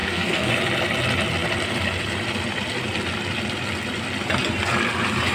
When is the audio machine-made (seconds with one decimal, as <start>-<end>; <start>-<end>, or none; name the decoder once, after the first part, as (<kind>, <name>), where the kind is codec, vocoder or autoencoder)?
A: 0.0-0.5 (codec, SNAC)